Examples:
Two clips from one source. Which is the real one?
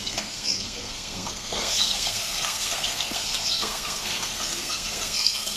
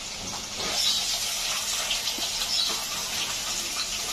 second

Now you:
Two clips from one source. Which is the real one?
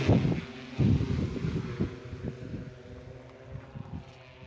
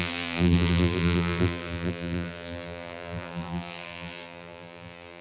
first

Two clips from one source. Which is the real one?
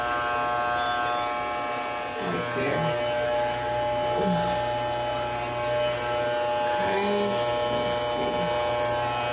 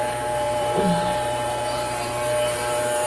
first